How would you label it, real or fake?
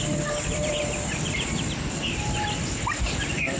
fake